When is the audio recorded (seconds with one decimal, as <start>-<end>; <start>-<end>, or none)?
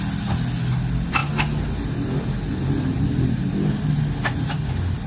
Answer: 0.0-5.1